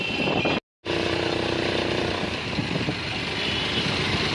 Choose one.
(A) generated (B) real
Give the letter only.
B